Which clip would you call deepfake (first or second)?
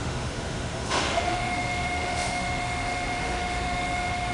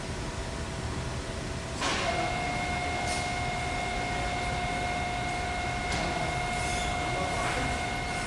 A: first